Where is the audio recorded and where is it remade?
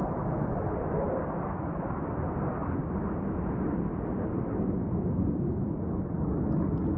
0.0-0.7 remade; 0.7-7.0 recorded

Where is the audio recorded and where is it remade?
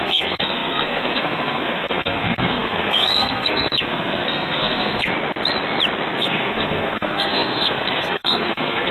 0.0-5.1 remade; 5.1-6.2 recorded; 6.2-8.9 remade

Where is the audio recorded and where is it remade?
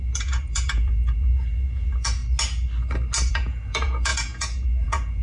0.0-2.2 remade; 2.2-3.3 recorded; 3.3-5.2 remade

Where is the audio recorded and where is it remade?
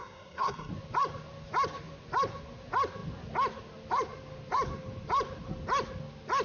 0.0-0.7 remade; 0.7-6.4 recorded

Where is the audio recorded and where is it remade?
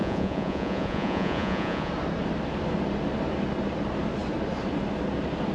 0.0-1.9 remade; 1.9-5.5 recorded